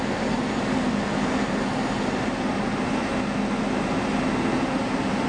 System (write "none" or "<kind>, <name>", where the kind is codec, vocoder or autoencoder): none